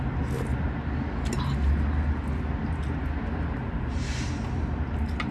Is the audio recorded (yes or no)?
yes